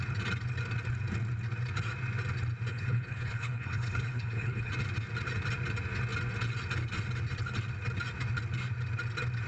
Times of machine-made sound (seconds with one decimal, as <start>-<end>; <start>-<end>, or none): 2.7-4.7